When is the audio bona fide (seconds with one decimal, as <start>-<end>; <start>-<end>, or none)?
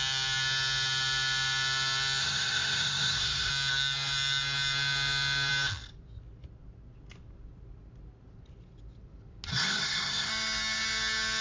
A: 0.0-2.2; 3.5-9.5; 10.3-11.4